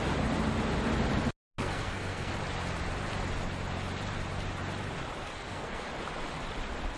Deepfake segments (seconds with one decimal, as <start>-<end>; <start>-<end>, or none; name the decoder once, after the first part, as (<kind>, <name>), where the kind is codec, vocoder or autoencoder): 1.6-2.3 (codec, SNAC); 5.2-5.9